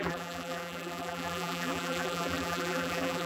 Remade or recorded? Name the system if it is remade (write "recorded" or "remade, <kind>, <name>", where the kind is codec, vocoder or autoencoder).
remade, vocoder, BigVGAN v2